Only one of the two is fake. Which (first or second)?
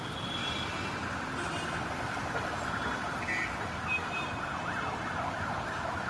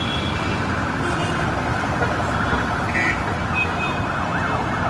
first